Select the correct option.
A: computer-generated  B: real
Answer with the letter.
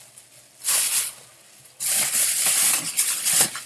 B